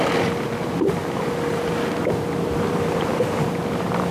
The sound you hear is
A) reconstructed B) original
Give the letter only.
A